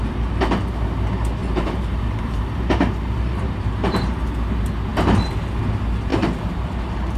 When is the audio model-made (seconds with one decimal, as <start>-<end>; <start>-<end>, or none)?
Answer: 1.4-4.2; 6.1-7.2